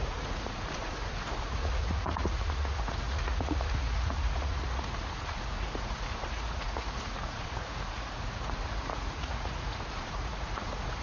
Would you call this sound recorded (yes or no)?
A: no